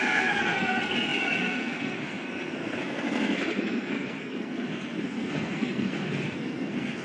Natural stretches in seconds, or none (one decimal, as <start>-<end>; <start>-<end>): none